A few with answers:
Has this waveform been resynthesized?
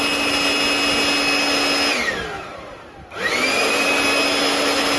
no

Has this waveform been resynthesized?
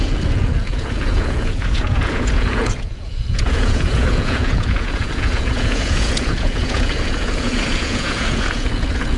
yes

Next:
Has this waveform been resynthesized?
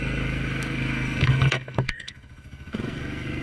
yes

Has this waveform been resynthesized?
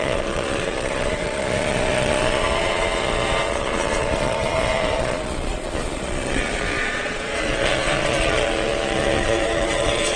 yes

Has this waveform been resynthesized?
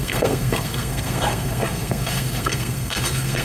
yes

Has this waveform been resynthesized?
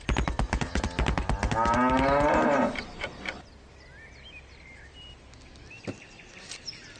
no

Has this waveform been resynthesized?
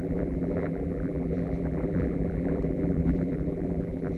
yes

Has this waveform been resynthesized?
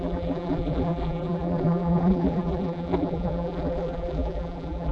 yes